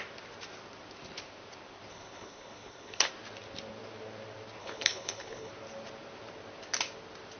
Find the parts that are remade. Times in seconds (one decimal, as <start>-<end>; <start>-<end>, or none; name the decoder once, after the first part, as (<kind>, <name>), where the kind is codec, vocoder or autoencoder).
1.9-3.1 (codec, HILCodec); 4.6-5.5